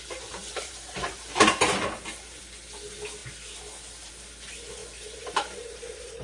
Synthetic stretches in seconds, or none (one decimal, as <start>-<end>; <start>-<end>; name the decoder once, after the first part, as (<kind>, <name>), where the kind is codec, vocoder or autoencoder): 0.4-2.4 (vocoder, BigVGAN v2); 4.8-6.2